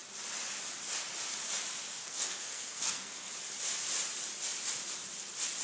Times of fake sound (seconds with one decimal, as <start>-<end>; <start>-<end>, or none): 2.0-3.3